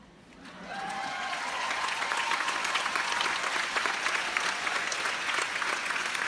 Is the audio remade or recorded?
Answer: remade